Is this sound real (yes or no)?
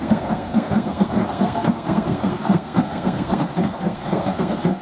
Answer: no